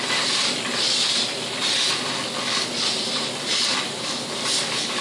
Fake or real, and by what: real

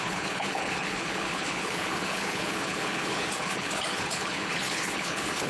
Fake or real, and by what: fake, codec, HILCodec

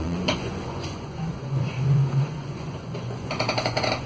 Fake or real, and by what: fake, vocoder, Vocos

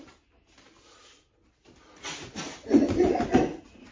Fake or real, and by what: real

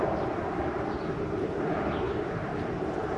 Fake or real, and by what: fake, vocoder, BigVGAN v2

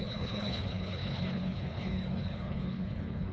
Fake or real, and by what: fake, codec, HILCodec